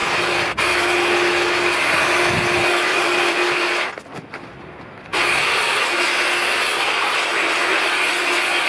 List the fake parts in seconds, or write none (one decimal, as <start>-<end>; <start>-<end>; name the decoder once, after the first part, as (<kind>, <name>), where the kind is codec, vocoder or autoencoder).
none